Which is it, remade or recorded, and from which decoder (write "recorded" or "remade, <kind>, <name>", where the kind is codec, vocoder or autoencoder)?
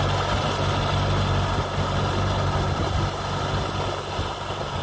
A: recorded